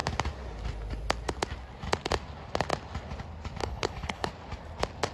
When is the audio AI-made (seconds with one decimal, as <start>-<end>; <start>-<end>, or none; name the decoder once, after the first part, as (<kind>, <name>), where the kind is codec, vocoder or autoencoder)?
3.6-4.3 (codec, HILCodec)